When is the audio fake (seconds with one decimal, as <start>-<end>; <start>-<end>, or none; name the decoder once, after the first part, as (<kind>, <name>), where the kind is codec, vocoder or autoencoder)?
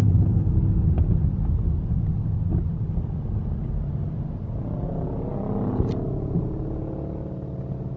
none